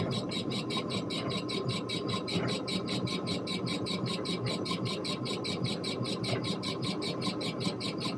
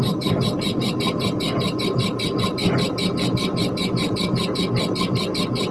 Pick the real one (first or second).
second